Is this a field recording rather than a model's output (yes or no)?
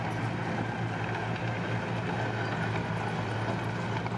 yes